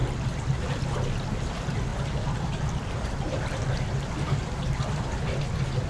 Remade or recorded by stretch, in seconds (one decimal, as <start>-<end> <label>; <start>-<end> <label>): 0.0-5.9 recorded